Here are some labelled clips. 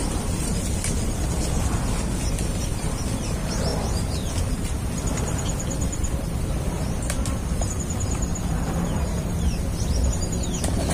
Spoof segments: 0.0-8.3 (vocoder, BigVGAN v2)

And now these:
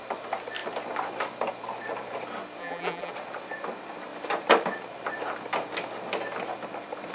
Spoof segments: 2.6-3.1 (vocoder, BigVGAN v2)

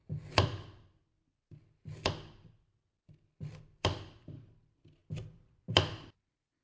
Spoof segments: 5.0-5.6 (vocoder, BigVGAN v2)

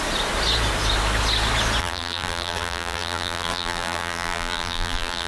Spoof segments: 1.8-5.3 (vocoder, BigVGAN v2)

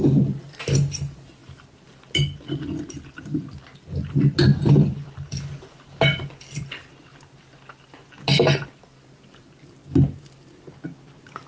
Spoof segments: none